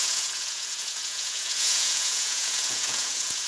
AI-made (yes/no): yes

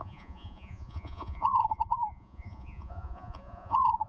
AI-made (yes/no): yes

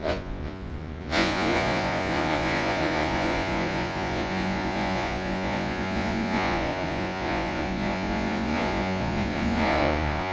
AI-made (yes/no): yes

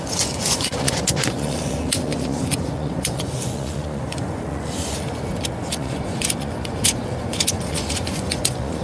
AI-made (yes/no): yes